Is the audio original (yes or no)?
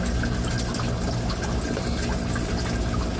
yes